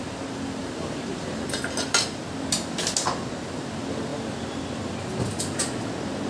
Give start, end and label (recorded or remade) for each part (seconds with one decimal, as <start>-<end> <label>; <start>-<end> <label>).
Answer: 0.0-0.6 recorded; 0.6-1.6 remade; 1.6-6.3 recorded